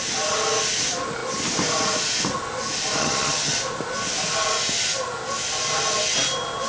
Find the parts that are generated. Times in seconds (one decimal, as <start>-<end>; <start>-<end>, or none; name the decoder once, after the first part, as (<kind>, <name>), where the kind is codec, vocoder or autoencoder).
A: 3.0-3.5 (vocoder, HiFi-GAN)